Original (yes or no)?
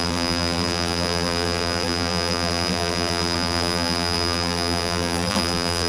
no